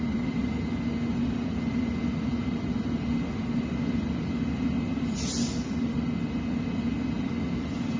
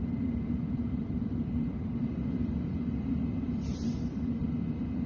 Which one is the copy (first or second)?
second